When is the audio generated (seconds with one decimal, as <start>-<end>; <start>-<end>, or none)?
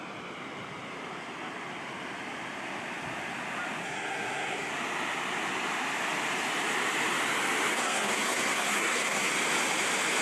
3.8-4.7; 7.7-9.3